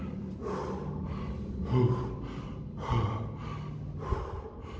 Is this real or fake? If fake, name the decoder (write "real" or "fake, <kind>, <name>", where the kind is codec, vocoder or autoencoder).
real